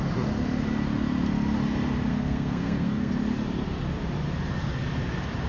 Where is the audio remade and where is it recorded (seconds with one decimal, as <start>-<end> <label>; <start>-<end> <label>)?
0.0-2.1 recorded; 2.1-3.1 remade; 3.1-5.5 recorded